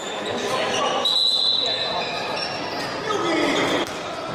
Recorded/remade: recorded